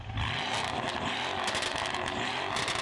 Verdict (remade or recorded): recorded